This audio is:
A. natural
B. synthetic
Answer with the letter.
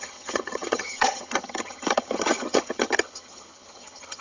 B